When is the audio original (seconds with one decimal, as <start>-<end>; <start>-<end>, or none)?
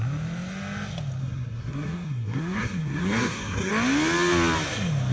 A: 0.0-1.2; 3.7-5.1